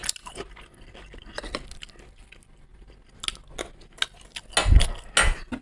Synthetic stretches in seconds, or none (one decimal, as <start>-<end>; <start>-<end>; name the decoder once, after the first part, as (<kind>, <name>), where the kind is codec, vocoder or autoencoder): none